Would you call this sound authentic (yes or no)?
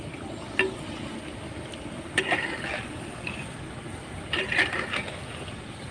yes